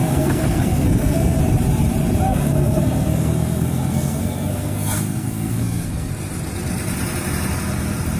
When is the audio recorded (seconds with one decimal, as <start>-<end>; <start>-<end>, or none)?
1.4-2.3; 6.1-8.2